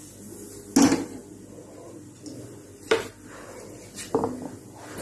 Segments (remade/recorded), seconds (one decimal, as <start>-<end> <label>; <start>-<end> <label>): 0.0-5.0 recorded

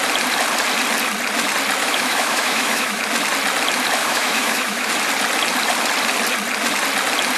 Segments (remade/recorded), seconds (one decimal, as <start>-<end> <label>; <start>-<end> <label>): 0.0-1.8 recorded; 1.8-3.0 remade; 3.0-4.0 recorded; 4.0-4.9 remade; 4.9-7.4 recorded

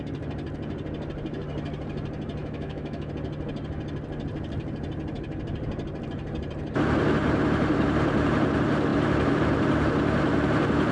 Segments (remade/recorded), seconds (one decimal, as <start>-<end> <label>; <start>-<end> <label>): 0.0-2.4 recorded; 2.4-3.1 remade; 3.1-10.9 recorded